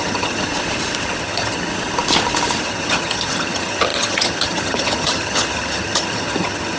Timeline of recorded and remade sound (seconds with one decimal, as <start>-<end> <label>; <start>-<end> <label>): 0.0-0.5 remade; 0.5-1.2 recorded; 1.2-1.7 remade; 1.7-2.6 recorded; 2.6-6.8 remade